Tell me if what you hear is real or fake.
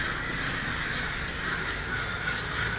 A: real